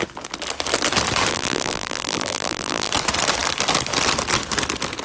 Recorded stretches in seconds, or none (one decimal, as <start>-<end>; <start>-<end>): 0.0-1.3; 2.9-5.0